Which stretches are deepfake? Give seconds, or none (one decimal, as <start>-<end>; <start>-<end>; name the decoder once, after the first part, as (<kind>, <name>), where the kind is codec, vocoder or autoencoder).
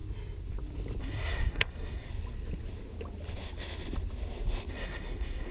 1.0-2.1 (codec, SNAC); 4.7-5.5